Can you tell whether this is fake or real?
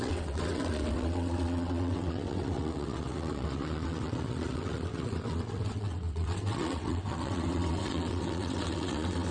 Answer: fake